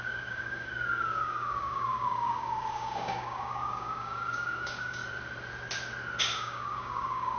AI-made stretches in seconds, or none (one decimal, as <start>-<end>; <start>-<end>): 0.0-5.0; 6.2-7.4